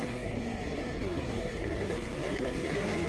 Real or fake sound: fake